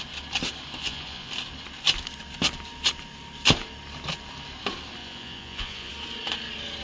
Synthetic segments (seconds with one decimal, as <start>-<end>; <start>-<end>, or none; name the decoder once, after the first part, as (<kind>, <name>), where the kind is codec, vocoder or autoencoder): 0.8-1.3 (vocoder, Vocos); 5.0-5.9